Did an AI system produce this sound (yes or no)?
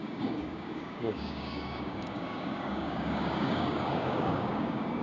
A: yes